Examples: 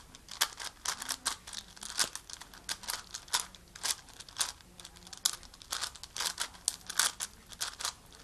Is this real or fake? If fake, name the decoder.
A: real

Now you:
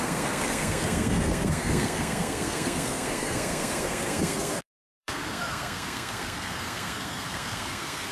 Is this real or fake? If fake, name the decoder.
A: fake, codec, SNAC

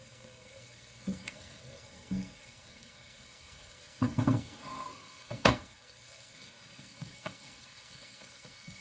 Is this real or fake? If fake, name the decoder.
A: fake, codec, SNAC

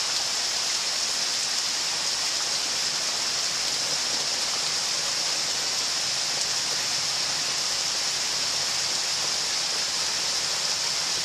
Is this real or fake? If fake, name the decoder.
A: real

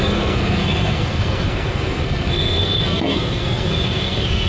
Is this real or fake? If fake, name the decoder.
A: fake, codec, SNAC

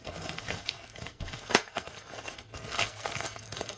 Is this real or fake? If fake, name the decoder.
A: fake, codec, SNAC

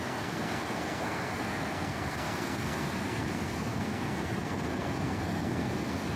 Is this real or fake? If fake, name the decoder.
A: fake, codec, SNAC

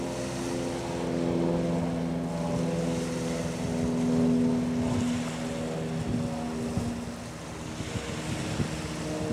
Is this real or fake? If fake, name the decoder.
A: real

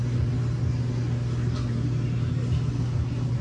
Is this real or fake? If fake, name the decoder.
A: real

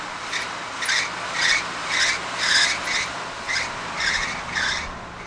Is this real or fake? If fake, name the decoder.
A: real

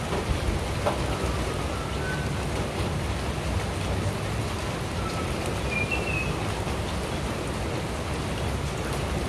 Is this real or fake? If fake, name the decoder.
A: real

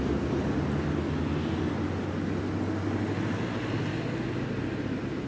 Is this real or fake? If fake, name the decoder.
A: real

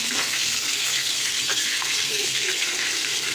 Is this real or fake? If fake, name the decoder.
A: fake, codec, SNAC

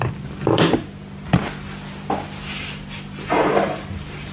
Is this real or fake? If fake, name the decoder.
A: real